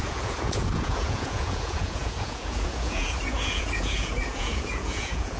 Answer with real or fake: fake